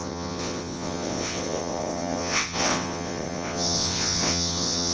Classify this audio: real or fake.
fake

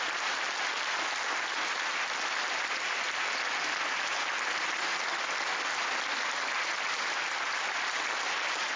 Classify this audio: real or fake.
real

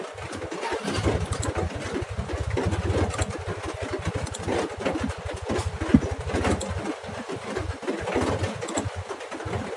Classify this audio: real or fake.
real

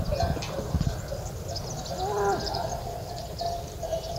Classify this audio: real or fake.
real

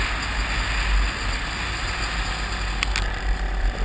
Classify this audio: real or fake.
real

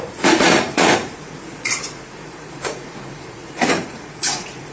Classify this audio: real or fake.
fake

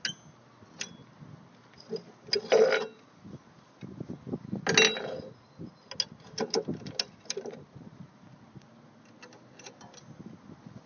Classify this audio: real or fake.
real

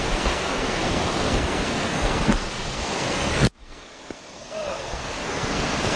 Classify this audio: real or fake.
fake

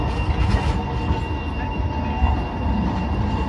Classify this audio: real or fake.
real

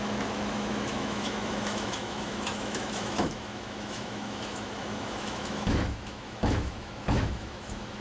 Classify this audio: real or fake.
fake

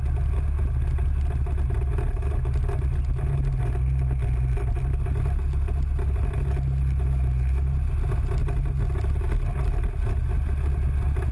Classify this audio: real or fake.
real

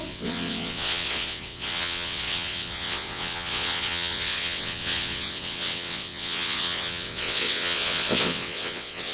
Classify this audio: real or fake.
fake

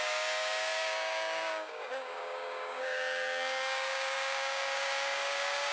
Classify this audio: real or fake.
fake